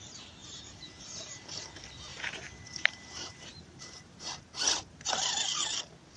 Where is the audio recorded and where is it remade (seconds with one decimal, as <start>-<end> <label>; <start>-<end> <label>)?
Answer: 0.0-0.4 recorded; 0.4-1.6 remade; 1.6-2.1 recorded; 2.1-5.8 remade; 5.8-6.2 recorded